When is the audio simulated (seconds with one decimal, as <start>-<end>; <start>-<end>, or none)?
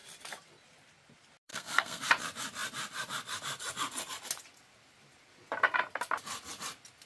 1.5-2.0